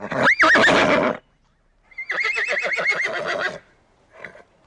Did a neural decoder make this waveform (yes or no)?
no